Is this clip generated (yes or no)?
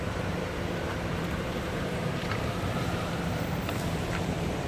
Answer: yes